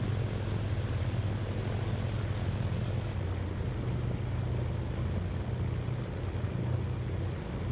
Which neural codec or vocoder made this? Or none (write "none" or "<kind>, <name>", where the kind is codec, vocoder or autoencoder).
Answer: none